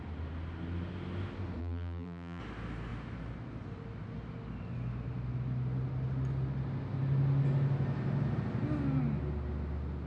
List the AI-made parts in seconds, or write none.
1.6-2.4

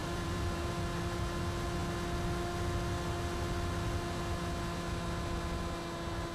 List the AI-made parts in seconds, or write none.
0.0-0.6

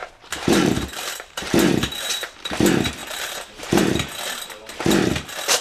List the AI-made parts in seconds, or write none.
0.0-2.3; 3.0-3.8

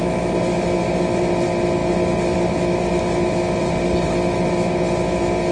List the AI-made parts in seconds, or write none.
none

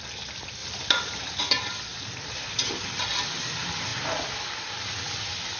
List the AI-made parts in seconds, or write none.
0.6-1.4; 1.9-2.8

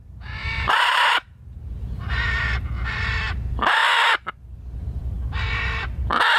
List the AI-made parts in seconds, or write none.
0.4-2.2

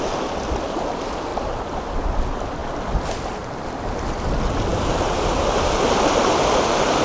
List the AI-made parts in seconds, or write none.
1.3-1.9; 4.7-6.2